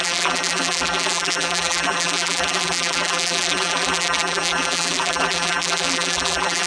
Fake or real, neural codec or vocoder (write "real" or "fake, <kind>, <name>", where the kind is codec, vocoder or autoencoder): fake, vocoder, BigVGAN v2